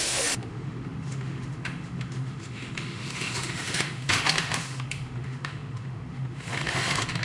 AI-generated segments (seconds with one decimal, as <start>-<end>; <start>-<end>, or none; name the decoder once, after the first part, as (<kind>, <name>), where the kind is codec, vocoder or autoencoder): 0.0-7.2 (autoencoder, DAC-VAE)